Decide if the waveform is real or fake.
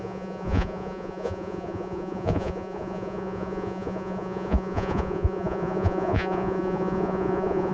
fake